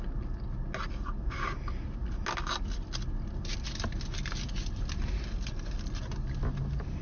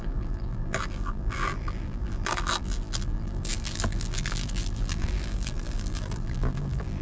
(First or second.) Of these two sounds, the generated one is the second